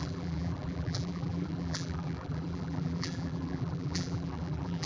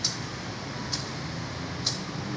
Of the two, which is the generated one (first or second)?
first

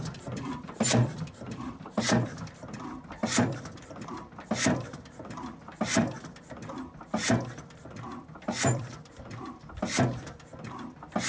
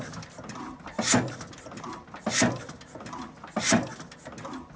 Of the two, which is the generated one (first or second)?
first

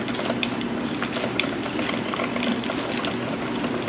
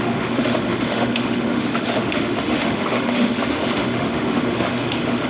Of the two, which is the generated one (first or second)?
second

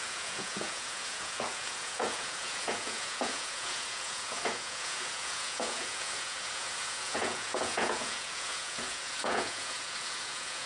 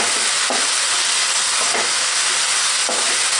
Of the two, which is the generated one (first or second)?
first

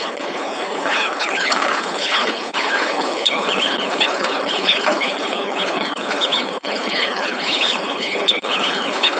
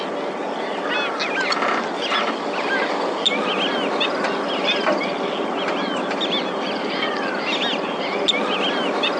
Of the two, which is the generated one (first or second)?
first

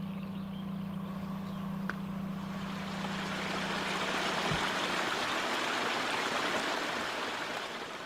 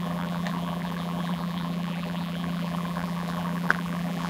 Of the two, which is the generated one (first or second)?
second